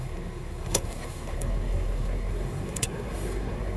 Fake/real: fake